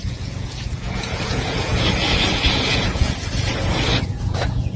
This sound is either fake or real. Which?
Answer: fake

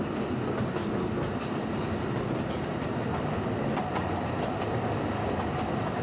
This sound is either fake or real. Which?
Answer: real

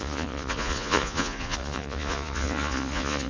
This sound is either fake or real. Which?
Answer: fake